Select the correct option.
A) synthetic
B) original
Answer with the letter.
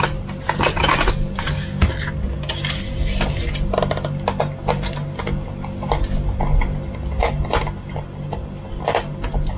B